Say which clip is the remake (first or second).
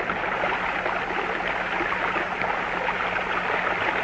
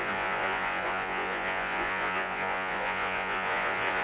second